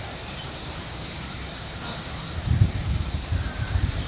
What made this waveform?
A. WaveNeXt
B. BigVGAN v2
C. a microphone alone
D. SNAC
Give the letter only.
B